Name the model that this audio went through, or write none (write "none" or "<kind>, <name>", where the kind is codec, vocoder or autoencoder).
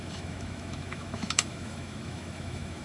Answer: autoencoder, DAC-VAE